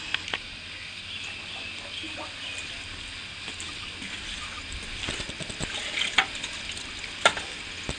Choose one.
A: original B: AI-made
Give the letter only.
A